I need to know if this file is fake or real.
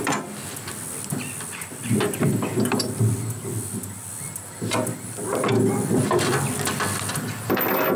real